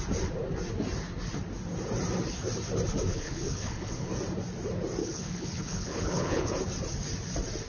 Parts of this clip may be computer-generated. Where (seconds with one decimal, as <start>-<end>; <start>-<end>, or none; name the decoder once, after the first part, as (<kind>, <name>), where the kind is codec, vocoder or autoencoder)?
3.1-4.1 (codec, HILCodec); 5.0-6.5